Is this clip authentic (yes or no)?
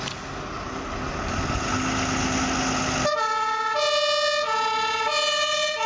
yes